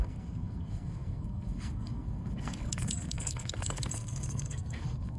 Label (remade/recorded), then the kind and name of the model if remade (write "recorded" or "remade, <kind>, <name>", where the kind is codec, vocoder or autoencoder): remade, codec, SNAC